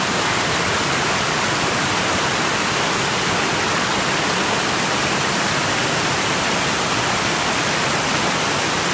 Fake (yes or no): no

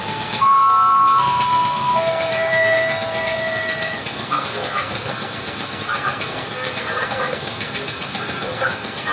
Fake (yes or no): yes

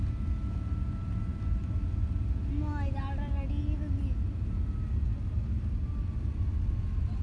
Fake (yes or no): no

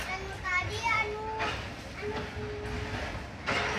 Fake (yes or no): no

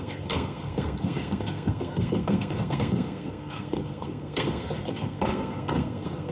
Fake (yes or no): yes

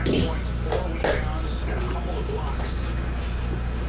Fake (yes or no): no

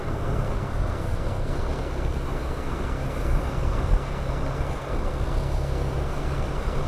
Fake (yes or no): yes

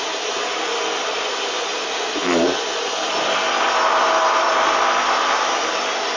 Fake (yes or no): no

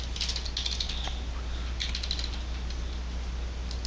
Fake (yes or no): no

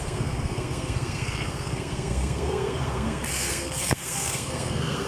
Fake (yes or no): yes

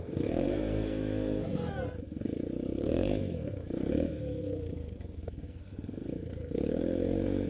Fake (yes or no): yes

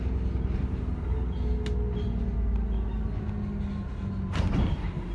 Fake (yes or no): no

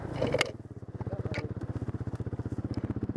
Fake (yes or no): no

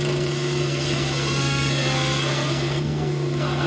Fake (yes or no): yes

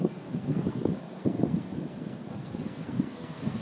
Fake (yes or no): yes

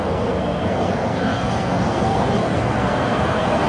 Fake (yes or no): yes